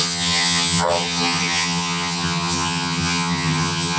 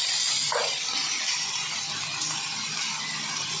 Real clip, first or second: second